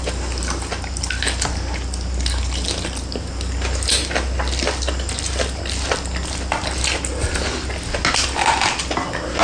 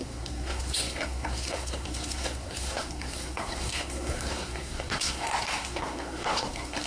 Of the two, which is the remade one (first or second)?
second